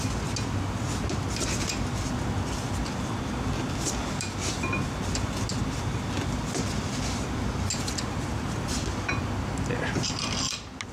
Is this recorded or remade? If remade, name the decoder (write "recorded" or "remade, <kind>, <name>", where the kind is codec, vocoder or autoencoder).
recorded